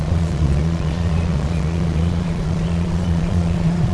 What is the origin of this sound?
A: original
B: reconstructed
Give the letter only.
B